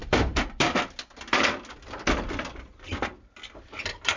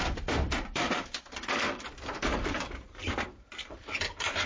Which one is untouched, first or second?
first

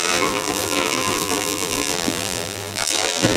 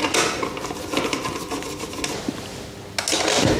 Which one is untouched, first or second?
second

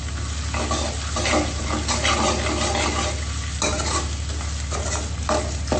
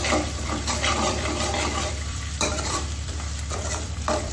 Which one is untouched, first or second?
first